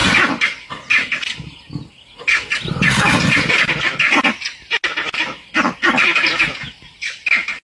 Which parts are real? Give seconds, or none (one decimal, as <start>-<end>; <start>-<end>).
0.0-7.7

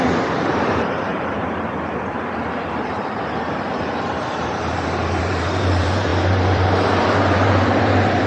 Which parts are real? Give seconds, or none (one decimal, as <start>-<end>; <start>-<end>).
none

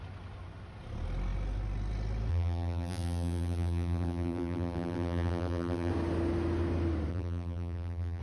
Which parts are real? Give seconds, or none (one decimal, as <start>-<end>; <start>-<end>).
0.0-2.3; 5.9-7.1

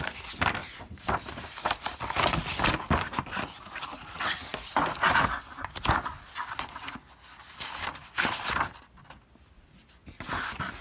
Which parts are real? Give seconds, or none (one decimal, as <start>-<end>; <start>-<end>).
0.0-0.6; 1.9-10.8